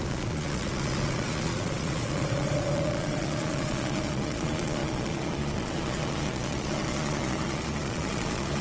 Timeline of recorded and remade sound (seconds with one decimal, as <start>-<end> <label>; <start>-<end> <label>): 0.0-8.6 remade